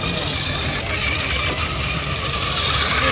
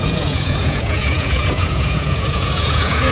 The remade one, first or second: second